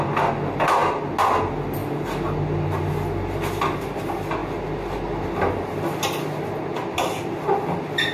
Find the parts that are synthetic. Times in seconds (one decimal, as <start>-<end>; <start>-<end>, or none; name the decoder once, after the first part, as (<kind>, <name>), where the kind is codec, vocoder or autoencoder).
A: none